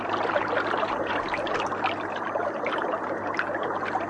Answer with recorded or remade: recorded